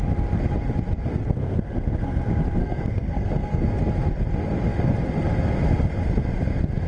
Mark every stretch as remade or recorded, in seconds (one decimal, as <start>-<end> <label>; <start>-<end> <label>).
0.0-1.1 recorded; 1.1-2.2 remade; 2.2-2.6 recorded; 2.6-3.8 remade; 3.8-6.9 recorded

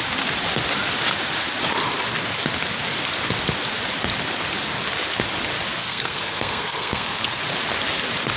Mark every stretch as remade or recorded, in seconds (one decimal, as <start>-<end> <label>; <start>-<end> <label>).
0.0-5.8 recorded; 5.8-7.4 remade; 7.4-8.4 recorded

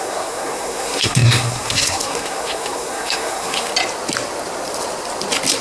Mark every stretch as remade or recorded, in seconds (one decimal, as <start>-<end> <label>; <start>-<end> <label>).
0.0-3.7 remade; 3.7-5.6 recorded

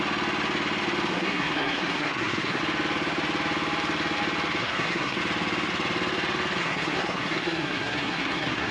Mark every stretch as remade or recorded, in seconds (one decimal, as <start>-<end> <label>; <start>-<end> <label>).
0.0-1.1 recorded; 1.1-2.6 remade; 2.6-4.6 recorded; 4.6-5.2 remade; 5.2-6.6 recorded; 6.6-8.7 remade